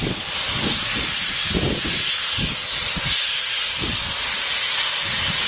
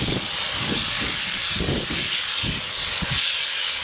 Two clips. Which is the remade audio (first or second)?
second